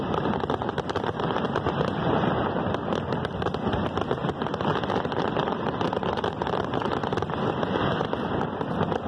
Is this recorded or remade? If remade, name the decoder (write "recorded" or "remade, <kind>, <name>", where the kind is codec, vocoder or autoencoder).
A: recorded